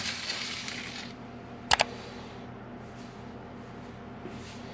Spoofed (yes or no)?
no